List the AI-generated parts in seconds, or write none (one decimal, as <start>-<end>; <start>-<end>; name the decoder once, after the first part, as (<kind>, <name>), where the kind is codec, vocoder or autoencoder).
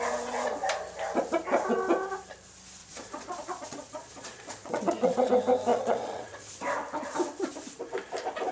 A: 2.8-5.3 (vocoder, Vocos); 5.7-6.5